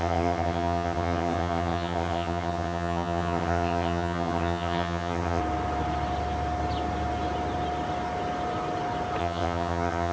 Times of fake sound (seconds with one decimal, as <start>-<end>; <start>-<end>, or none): 0.0-5.4; 9.2-10.1